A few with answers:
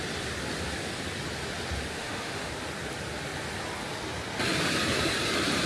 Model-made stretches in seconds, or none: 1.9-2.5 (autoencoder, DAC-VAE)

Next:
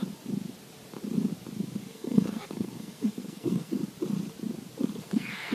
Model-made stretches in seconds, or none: 1.8-3.8 (codec, SNAC); 5.0-5.5

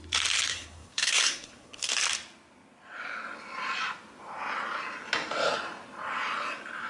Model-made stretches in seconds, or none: 0.5-1.9 (codec, SNAC)

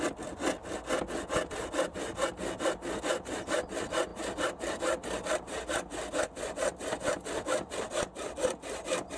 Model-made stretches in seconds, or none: none

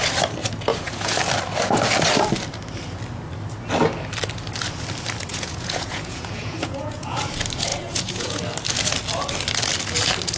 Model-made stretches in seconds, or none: 0.7-1.2 (vocoder, Vocos); 5.3-7.2; 7.7-8.4

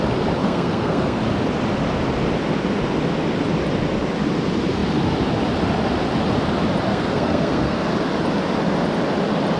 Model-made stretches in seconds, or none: 0.4-1.2 (codec, SNAC); 6.9-7.9